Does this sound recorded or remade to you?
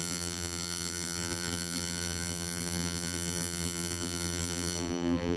remade